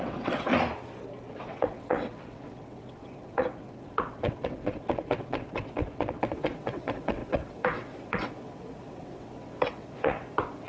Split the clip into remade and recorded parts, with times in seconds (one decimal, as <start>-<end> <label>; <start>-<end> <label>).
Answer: 0.0-0.5 remade; 0.5-1.3 recorded; 1.3-10.7 remade